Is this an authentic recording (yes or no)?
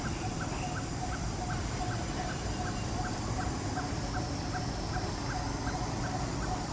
yes